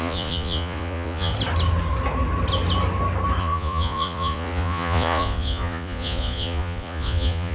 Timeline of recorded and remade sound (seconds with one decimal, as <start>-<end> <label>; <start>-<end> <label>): 0.0-1.3 remade; 1.3-3.4 recorded; 3.4-7.5 remade